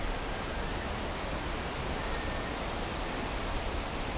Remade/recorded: recorded